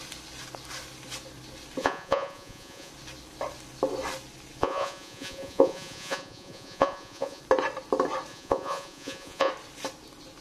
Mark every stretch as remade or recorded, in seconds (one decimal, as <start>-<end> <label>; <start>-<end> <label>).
0.0-1.8 recorded; 1.8-2.9 remade; 2.9-4.6 recorded; 4.6-7.4 remade; 7.4-8.3 recorded; 8.3-9.5 remade; 9.5-10.4 recorded